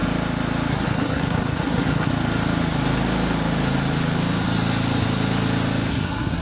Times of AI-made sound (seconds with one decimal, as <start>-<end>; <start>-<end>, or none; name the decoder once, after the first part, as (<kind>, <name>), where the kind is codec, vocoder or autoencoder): 0.7-2.1 (codec, SNAC); 5.9-6.4